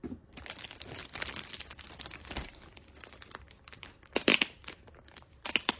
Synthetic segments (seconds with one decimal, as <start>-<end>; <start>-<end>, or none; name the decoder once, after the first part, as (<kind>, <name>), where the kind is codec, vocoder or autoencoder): 0.0-5.8 (vocoder, BigVGAN v2)